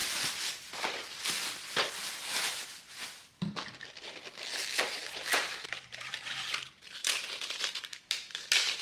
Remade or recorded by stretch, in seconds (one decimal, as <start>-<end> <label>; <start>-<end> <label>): 0.0-4.8 recorded; 4.8-8.8 remade